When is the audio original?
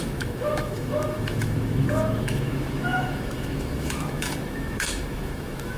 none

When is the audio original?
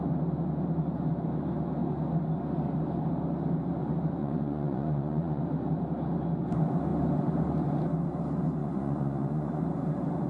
0.0-4.2; 5.4-8.6; 9.6-10.3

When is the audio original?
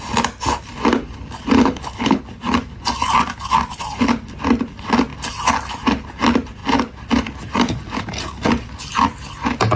0.0-1.6; 2.2-9.8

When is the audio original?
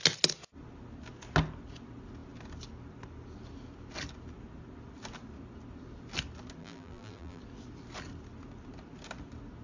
0.0-6.6; 7.4-9.6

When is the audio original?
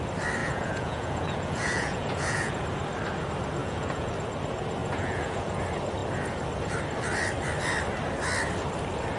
0.0-0.4; 2.5-3.6; 4.1-4.8; 5.6-9.2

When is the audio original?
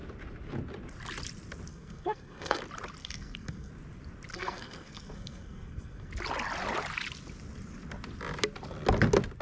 0.0-1.7; 2.6-3.0; 3.7-4.3; 6.1-9.4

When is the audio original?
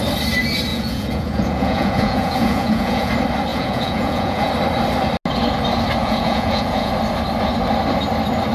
0.0-0.7; 3.1-3.5; 4.5-6.0; 6.9-8.5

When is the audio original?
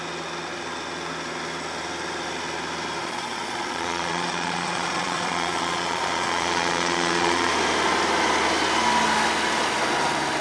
0.0-3.0; 7.5-10.4